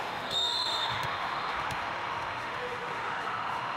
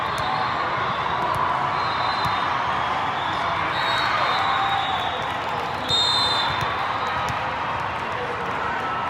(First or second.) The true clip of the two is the second